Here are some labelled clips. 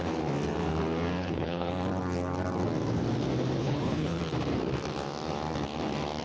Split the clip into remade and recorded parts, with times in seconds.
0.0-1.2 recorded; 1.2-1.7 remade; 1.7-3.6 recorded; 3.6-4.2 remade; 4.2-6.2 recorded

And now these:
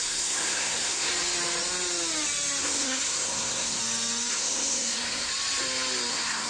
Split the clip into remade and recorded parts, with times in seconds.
0.0-1.1 remade; 1.1-2.6 recorded; 2.6-3.8 remade; 3.8-4.3 recorded; 4.3-5.3 remade; 5.3-6.1 recorded; 6.1-6.5 remade

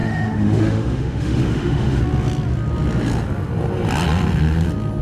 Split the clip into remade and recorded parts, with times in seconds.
0.0-2.0 remade; 2.0-5.0 recorded

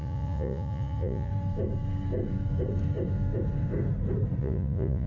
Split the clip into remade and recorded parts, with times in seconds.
0.0-1.3 remade; 1.3-4.4 recorded; 4.4-5.1 remade

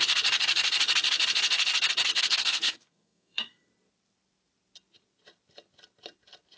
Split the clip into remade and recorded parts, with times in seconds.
0.0-2.1 recorded; 2.1-3.7 remade; 3.7-6.6 recorded